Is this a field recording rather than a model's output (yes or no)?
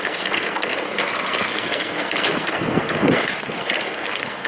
no